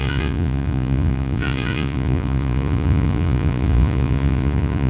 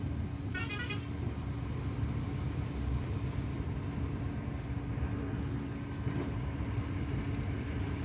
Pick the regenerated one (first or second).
first